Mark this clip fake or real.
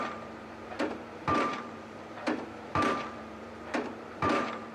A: fake